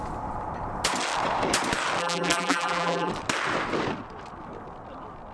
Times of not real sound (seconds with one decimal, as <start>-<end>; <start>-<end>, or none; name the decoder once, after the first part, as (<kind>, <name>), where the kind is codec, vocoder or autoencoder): 2.0-3.1 (vocoder, BigVGAN v2)